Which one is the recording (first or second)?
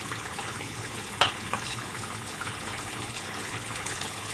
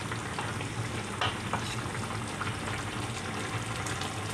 second